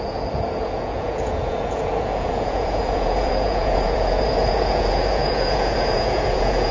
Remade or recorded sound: remade